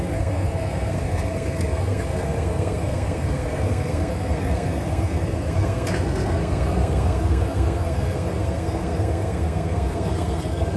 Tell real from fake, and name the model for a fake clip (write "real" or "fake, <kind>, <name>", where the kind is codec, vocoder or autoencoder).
fake, codec, SNAC